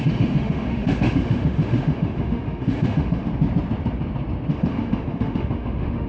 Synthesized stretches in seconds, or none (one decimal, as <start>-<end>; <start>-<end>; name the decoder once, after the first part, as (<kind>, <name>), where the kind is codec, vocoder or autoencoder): 0.0-3.3 (autoencoder, DAC-VAE); 4.5-6.1